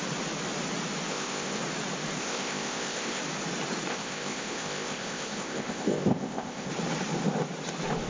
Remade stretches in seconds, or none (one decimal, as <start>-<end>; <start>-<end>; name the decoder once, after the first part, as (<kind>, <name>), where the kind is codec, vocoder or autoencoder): 1.1-1.6 (codec, ZipCodec); 2.2-3.2; 3.9-6.7